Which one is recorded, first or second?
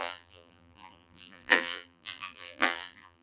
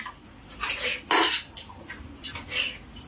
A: second